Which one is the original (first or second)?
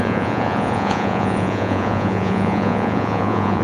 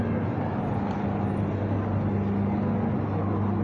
second